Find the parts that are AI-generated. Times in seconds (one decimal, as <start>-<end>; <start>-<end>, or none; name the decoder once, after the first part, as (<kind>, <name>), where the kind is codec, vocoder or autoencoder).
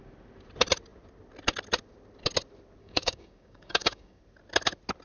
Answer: 2.8-4.2 (codec, DAC)